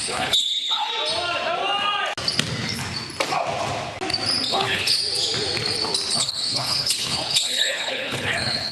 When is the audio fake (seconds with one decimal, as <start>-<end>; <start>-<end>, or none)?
0.0-0.9; 4.5-5.0; 6.1-8.7